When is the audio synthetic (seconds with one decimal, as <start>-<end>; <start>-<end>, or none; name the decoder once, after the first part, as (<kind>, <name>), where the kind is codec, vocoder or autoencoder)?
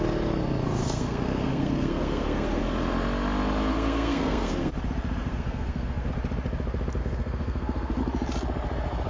0.8-2.6 (codec, SNAC); 3.7-4.7; 5.2-6.1; 7.0-8.0